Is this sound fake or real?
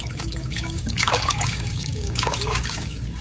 fake